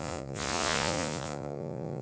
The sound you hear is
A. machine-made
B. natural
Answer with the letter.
A